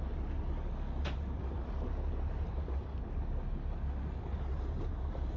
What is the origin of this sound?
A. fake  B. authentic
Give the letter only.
B